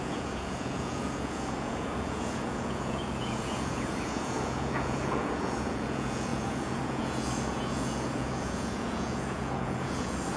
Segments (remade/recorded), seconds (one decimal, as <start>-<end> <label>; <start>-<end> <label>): 0.0-10.4 remade